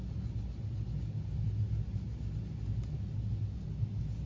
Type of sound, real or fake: real